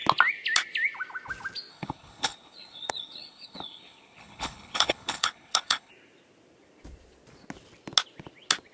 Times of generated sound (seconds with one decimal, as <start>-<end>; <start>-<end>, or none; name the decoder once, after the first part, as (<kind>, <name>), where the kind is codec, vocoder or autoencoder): 1.7-5.9 (codec, HILCodec)